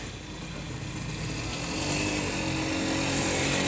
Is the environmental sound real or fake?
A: real